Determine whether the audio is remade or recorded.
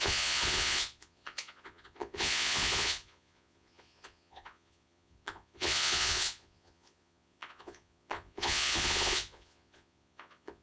remade